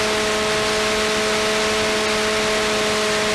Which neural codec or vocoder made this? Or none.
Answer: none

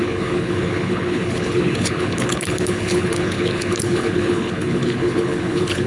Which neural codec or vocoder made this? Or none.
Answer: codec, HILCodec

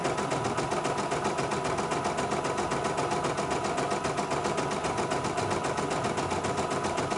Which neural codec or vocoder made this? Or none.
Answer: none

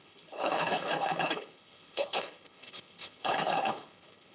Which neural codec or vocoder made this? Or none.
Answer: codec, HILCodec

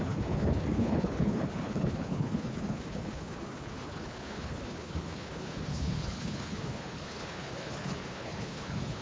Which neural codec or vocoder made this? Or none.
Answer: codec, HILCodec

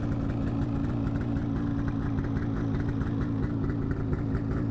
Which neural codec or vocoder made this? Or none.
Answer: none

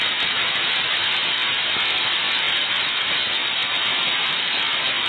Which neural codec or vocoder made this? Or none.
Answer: none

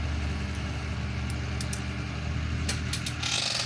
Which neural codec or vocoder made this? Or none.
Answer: none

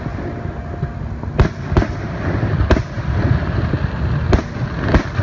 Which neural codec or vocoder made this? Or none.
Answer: none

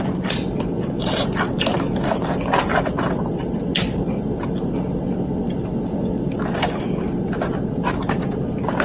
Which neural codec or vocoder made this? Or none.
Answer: none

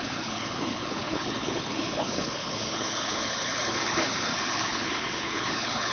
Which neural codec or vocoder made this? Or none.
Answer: codec, HILCodec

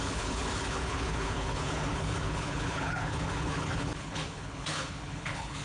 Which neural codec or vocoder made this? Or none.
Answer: codec, HILCodec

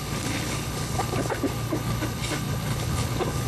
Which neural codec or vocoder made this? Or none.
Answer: codec, HILCodec